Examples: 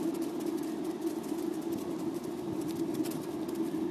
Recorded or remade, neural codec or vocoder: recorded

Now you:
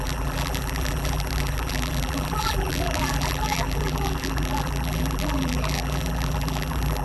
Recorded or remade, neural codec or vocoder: remade, vocoder, BigVGAN v2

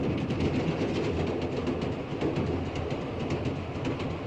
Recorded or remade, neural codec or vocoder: recorded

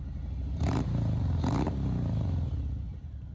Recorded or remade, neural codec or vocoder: remade, vocoder, BigVGAN v2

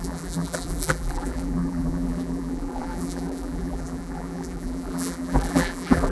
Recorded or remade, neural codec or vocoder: remade, vocoder, BigVGAN v2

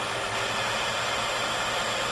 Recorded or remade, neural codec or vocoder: recorded